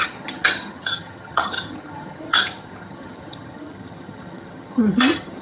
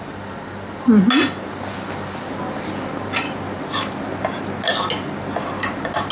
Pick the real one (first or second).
second